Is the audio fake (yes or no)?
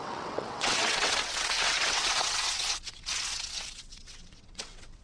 yes